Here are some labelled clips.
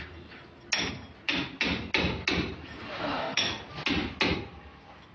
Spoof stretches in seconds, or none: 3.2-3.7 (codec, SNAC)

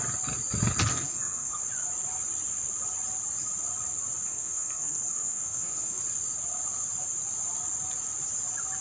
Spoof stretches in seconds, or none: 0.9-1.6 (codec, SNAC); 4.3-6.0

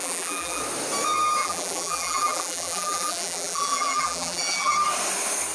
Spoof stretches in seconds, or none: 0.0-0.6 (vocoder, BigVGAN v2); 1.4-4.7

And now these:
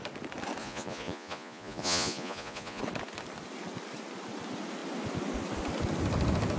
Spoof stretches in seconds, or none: 0.6-2.8 (vocoder, Vocos)

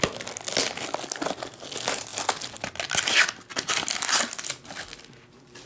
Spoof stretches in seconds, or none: none

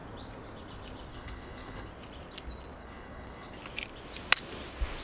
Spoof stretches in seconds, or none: 1.1-1.9 (codec, HILCodec); 2.8-3.5

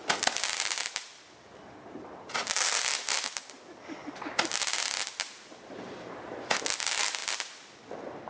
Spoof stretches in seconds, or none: none